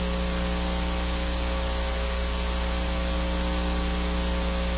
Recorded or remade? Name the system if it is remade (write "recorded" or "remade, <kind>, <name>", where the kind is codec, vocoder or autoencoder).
recorded